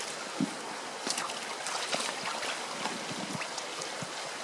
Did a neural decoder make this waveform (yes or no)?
no